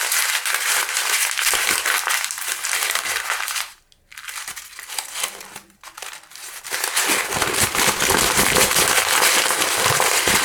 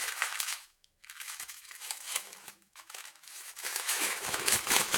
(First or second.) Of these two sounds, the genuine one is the first